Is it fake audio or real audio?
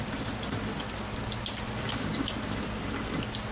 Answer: real